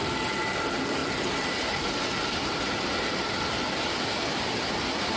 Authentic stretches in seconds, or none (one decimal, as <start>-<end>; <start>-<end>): 0.0-5.2